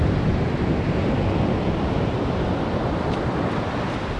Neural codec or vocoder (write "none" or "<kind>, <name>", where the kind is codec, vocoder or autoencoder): vocoder, BigVGAN v2